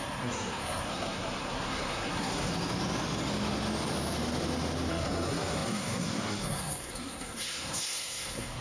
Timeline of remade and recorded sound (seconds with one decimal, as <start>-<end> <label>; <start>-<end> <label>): 0.0-2.5 remade; 2.5-4.9 recorded; 4.9-8.6 remade